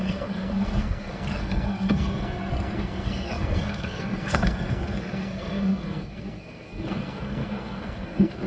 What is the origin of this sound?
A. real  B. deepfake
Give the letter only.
B